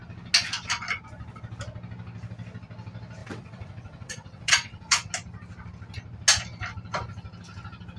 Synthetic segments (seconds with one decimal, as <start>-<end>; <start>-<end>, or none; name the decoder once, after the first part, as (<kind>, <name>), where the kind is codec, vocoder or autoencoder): 3.2-5.1 (vocoder, WaveNeXt)